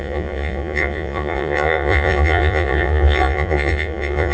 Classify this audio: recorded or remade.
remade